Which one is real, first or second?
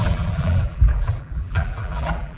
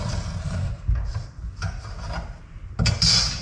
second